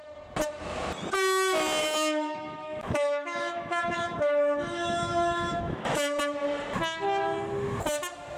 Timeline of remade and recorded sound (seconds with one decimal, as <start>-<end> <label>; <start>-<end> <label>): 0.0-1.8 recorded; 1.8-6.2 remade; 6.2-8.4 recorded